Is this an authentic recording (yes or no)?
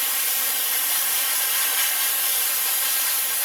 no